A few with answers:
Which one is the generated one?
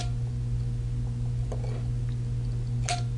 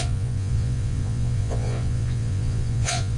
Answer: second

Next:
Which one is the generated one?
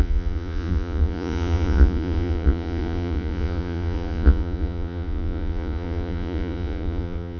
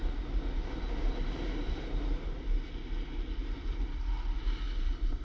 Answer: first